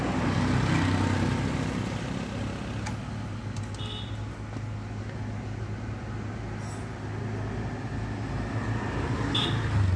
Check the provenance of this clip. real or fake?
real